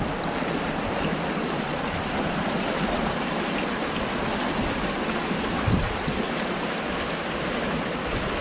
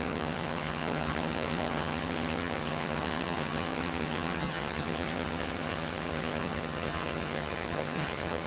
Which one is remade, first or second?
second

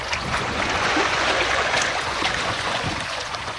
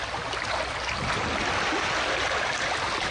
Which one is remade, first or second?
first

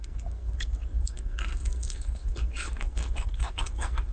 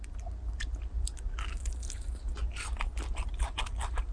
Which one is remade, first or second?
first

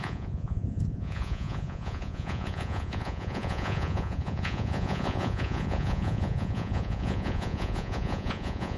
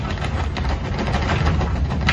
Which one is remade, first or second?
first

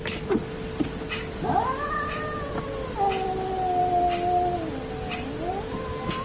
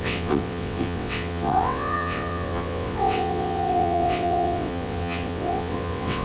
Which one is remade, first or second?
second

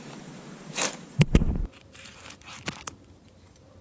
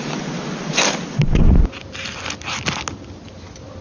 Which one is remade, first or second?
first